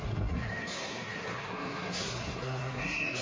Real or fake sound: fake